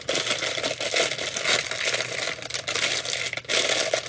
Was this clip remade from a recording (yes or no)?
no